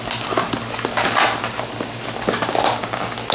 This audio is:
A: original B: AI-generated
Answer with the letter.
A